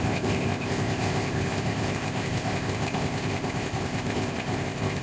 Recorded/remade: remade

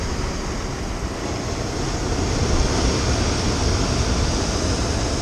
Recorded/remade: recorded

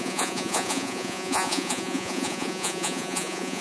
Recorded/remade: remade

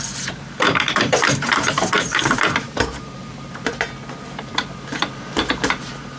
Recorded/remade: remade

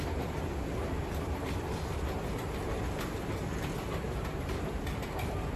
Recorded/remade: recorded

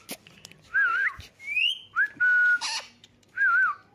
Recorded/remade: recorded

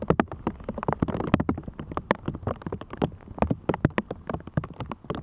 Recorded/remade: recorded